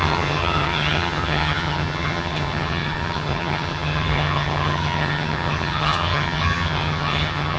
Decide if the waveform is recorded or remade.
remade